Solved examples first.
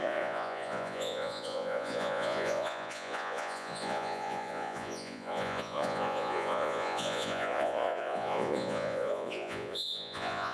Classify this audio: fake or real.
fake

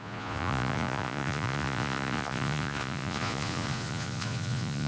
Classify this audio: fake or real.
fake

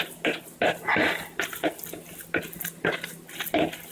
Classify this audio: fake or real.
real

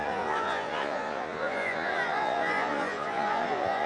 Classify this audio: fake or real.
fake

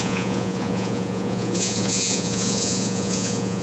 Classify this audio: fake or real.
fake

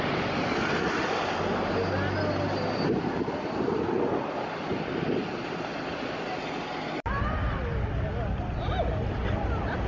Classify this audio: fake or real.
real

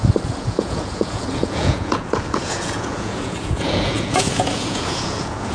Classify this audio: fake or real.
fake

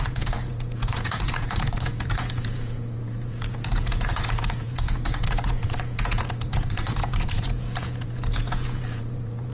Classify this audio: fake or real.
fake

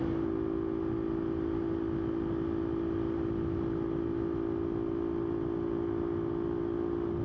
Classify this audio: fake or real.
real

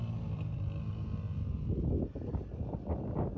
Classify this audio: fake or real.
real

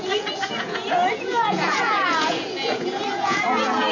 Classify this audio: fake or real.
fake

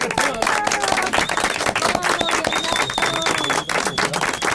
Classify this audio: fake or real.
real